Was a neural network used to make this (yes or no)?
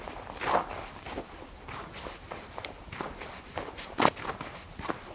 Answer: no